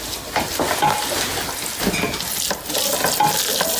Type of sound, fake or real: real